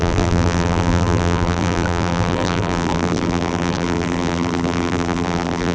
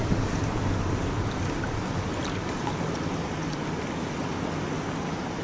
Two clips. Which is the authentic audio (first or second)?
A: second